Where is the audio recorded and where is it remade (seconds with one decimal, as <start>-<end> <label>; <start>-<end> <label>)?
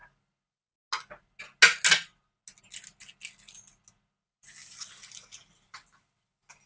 0.0-6.7 recorded